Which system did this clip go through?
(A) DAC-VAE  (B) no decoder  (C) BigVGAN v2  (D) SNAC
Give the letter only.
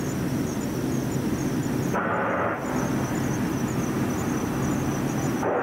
B